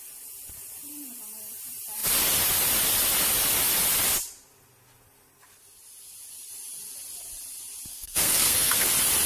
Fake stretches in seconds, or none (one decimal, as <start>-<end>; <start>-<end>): 7.9-8.9